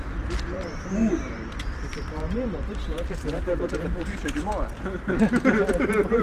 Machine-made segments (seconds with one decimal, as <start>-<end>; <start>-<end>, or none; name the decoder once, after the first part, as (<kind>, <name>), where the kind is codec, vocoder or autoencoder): 0.0-4.5 (vocoder, BigVGAN v2)